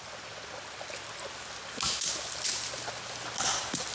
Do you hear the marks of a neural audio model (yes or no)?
no